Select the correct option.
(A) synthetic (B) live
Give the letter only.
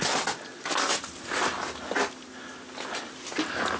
B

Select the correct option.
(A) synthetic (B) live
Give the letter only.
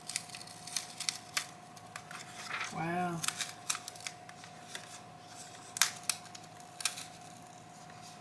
B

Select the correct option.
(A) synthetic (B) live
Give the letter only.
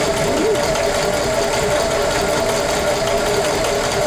B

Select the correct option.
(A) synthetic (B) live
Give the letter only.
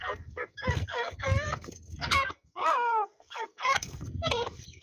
A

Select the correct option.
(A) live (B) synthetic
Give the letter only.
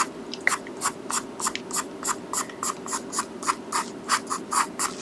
A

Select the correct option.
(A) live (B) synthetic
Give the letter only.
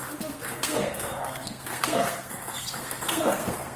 B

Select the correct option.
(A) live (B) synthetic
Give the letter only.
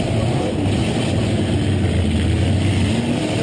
A